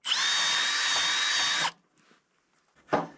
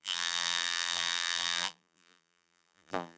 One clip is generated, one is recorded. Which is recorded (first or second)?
first